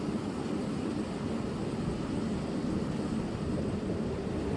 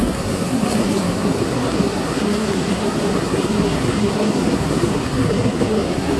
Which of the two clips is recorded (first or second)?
first